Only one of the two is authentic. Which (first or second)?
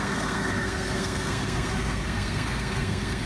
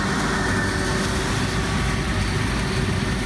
second